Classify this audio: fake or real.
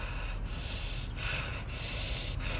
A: real